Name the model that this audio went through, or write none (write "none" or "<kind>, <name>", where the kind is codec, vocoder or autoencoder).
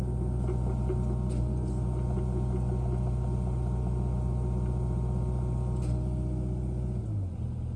none